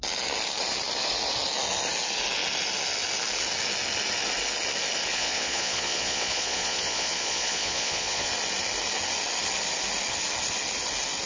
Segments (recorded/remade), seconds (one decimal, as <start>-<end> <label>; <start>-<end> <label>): 0.0-5.1 recorded; 5.1-8.3 remade; 8.3-11.3 recorded